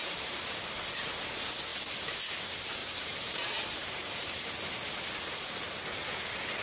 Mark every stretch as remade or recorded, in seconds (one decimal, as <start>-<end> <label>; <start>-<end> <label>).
0.0-0.6 remade; 0.6-2.8 recorded; 2.8-4.5 remade; 4.5-6.6 recorded